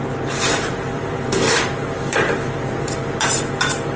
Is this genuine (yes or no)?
no